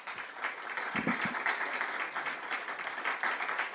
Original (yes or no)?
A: yes